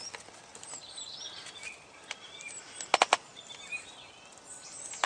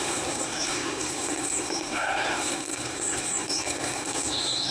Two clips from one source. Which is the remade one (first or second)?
second